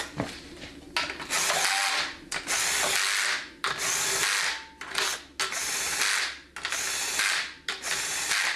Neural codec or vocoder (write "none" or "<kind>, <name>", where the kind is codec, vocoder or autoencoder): none